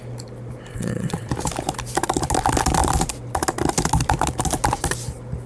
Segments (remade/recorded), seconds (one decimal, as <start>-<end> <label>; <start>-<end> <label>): 0.0-0.7 recorded; 0.7-1.3 remade; 1.3-5.5 recorded